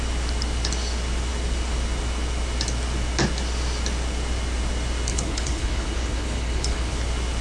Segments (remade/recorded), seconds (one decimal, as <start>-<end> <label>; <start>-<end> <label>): 0.0-5.1 recorded; 5.1-7.0 remade; 7.0-7.4 recorded